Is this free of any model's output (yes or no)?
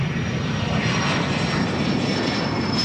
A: no